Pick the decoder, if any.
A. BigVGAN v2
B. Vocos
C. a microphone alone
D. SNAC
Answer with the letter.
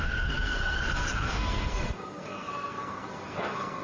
D